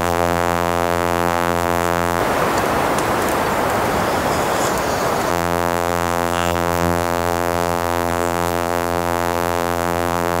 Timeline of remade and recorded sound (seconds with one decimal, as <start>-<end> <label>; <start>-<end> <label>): 0.0-2.2 remade; 2.2-5.3 recorded; 5.3-10.4 remade